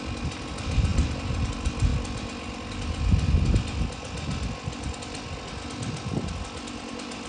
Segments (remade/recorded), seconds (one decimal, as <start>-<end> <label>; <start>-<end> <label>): 0.0-0.9 recorded; 0.9-1.5 remade; 1.5-7.3 recorded